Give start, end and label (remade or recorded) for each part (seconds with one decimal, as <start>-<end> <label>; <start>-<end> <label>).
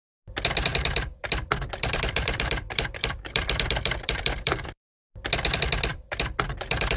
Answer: 0.0-0.7 recorded; 0.7-4.9 remade; 4.9-5.9 recorded; 5.9-7.0 remade